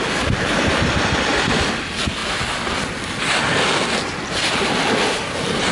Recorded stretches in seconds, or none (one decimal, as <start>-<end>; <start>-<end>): 0.0-5.7